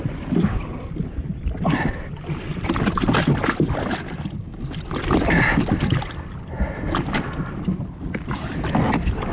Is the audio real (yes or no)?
yes